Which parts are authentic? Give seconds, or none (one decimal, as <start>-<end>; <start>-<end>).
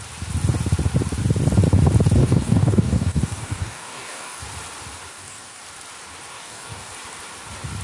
0.0-2.2; 4.4-5.1; 5.6-6.3; 6.9-7.8